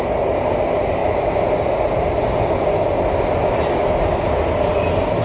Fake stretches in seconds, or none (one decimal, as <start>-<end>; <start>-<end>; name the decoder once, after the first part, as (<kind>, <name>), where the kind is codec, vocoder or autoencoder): none